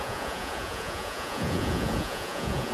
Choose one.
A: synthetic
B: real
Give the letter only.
A